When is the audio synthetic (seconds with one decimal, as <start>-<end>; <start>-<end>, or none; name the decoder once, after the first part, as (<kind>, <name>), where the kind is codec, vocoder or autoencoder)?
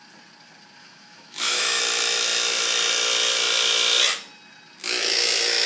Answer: 0.8-1.8 (autoencoder, DAC-VAE)